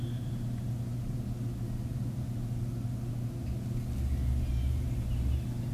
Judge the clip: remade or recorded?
recorded